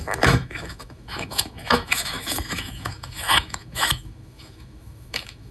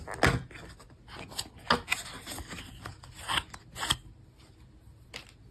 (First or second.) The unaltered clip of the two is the second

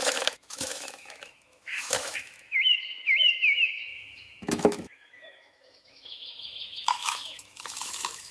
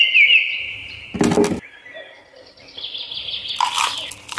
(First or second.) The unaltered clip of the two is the second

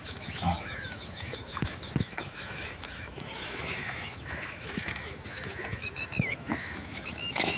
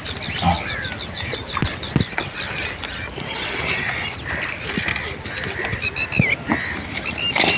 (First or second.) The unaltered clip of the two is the second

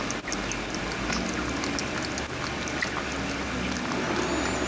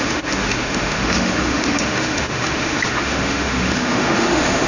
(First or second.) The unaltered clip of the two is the first